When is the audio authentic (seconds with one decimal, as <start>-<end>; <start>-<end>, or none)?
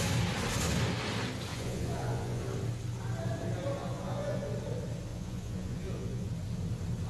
0.0-1.5; 2.4-3.8; 4.5-5.1; 6.3-7.1